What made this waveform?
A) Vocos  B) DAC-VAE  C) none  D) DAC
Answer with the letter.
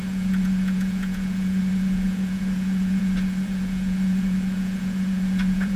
A